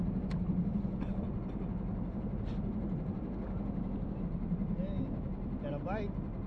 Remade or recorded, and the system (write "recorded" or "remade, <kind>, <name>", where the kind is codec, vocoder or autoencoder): recorded